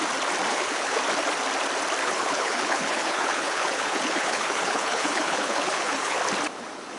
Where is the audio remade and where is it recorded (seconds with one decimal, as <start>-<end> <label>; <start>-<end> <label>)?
0.0-0.5 recorded; 0.5-1.0 remade; 1.0-2.0 recorded; 2.0-6.2 remade; 6.2-7.0 recorded